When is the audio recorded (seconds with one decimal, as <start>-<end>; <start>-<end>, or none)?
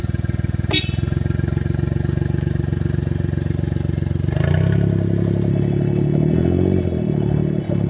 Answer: 0.0-5.5